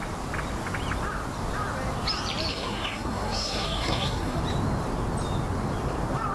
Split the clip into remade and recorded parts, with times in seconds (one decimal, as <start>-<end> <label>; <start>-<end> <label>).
0.0-2.5 recorded; 2.5-4.4 remade; 4.4-6.3 recorded